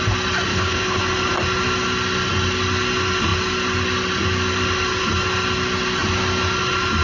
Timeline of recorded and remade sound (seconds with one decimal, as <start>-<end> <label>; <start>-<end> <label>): 0.0-0.5 recorded; 0.5-1.0 remade; 1.0-7.0 recorded